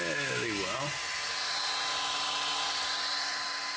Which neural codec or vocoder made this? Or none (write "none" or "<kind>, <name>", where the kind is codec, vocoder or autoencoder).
none